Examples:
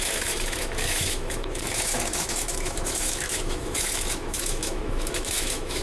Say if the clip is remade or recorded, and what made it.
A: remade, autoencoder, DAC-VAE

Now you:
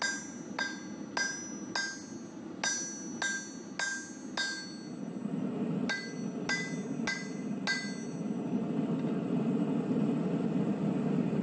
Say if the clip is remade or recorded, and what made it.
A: recorded